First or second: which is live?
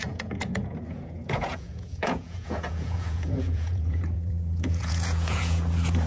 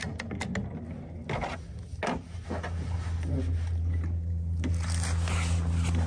second